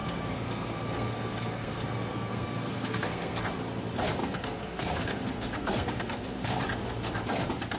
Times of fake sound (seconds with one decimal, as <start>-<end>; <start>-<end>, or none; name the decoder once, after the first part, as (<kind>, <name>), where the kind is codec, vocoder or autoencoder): 0.0-3.4 (codec, SNAC); 4.2-6.6